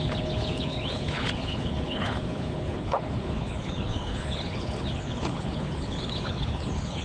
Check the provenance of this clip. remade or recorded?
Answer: remade